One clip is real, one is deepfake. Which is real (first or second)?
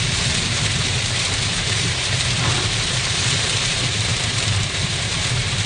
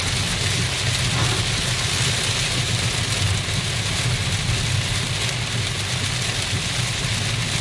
second